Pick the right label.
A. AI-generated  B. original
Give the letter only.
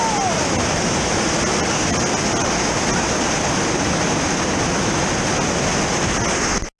B